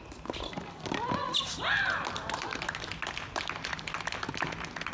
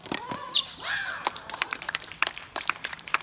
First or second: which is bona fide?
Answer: first